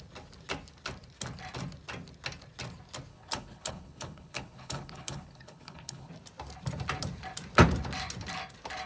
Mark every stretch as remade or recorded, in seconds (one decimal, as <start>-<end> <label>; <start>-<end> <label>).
0.0-3.1 recorded; 3.1-6.1 remade; 6.1-8.9 recorded